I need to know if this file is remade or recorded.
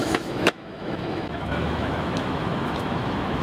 remade